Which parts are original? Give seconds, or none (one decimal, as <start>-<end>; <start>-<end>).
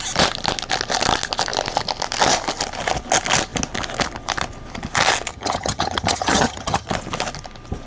0.0-5.3; 6.9-7.9